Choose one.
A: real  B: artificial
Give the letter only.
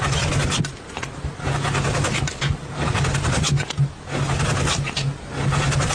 A